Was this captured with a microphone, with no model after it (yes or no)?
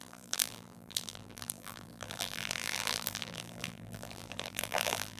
no